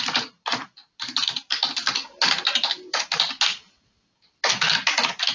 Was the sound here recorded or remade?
recorded